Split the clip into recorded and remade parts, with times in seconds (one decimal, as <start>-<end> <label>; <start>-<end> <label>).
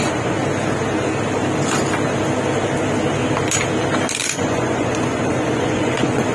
0.0-0.4 remade; 0.4-4.2 recorded; 4.2-6.3 remade